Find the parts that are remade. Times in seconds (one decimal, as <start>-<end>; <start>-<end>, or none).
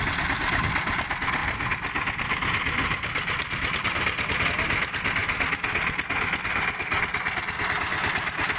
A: none